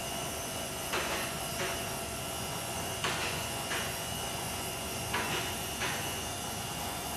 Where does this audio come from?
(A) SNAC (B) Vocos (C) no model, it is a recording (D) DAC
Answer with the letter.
B